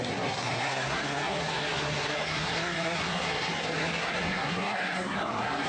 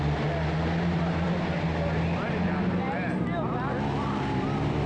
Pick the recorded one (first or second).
second